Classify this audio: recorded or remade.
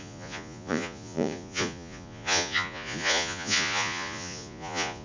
remade